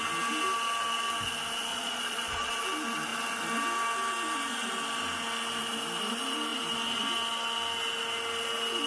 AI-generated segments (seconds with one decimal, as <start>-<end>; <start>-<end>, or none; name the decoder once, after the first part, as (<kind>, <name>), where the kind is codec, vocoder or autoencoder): 1.7-2.5 (vocoder, Vocos)